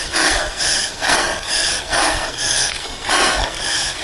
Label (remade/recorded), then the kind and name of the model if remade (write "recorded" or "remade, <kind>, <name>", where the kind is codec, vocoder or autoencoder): remade, codec, SNAC